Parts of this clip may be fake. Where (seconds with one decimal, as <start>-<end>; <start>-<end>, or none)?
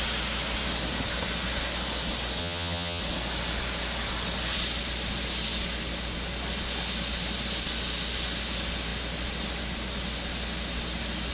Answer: 2.4-3.0